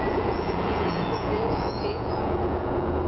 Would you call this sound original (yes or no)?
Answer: no